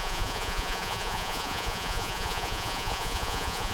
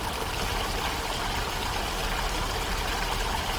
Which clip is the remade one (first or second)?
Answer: first